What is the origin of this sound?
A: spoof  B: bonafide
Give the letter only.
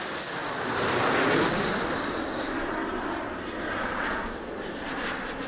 B